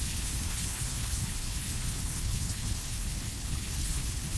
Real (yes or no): no